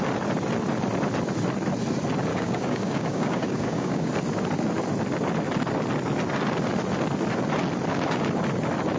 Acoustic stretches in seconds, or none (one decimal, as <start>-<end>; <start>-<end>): 0.0-2.3; 4.1-9.0